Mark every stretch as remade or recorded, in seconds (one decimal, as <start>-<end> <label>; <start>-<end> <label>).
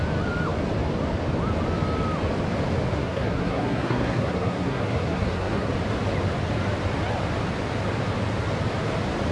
0.0-2.9 recorded; 2.9-5.7 remade; 5.7-9.3 recorded